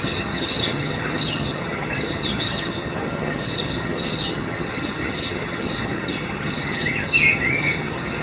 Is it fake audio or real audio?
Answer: fake